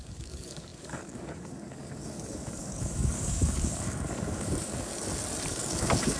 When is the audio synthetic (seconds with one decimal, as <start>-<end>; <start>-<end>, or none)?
0.0-4.9; 5.5-6.2